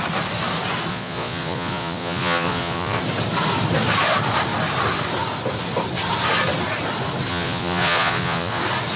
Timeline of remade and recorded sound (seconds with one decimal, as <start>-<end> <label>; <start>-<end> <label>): 0.0-0.9 recorded; 0.9-3.0 remade; 3.0-7.3 recorded; 7.3-8.6 remade; 8.6-9.0 recorded